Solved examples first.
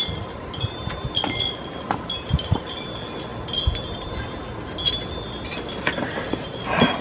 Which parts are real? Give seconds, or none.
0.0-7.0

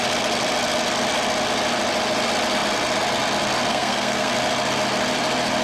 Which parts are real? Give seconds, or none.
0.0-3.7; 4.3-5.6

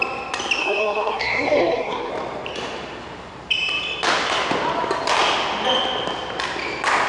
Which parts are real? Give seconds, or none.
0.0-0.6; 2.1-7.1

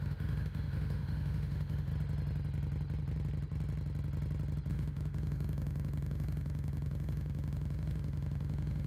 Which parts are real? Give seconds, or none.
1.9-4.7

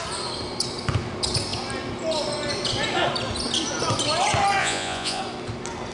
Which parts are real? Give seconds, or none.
0.0-4.6; 5.2-5.9

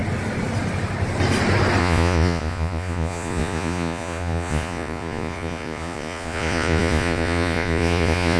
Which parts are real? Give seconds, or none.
0.0-1.8

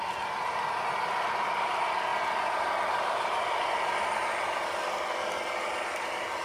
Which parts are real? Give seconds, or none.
0.0-2.1; 4.0-6.4

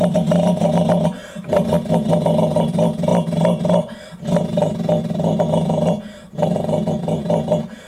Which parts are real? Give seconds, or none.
0.0-7.9